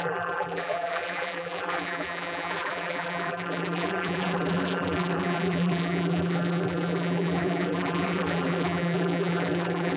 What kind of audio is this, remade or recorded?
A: remade